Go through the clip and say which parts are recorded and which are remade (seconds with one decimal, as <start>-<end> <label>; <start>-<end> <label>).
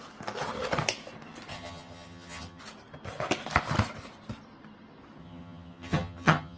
0.0-1.5 recorded; 1.5-2.6 remade; 2.6-5.2 recorded; 5.2-6.6 remade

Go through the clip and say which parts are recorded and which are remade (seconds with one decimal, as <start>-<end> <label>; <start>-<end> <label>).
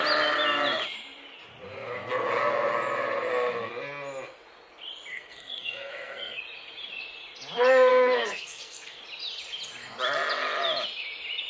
0.0-5.1 recorded; 5.1-6.4 remade; 6.4-7.9 recorded; 7.9-9.0 remade; 9.0-11.5 recorded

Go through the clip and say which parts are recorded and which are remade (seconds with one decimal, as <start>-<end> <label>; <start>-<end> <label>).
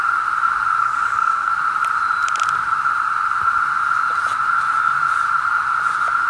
0.0-0.8 recorded; 0.8-1.5 remade; 1.5-6.3 recorded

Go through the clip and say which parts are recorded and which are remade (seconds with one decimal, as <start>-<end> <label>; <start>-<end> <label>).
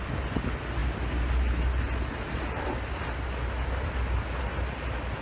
0.0-5.2 recorded